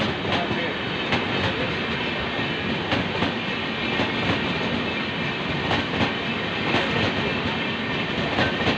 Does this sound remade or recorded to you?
recorded